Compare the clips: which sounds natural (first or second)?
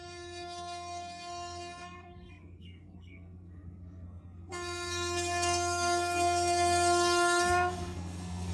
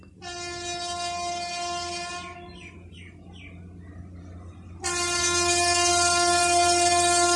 second